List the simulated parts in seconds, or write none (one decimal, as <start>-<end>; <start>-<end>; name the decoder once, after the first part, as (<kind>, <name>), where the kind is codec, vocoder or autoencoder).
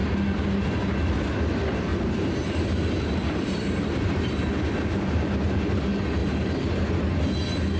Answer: 1.9-4.7 (vocoder, BigVGAN v2); 6.2-6.8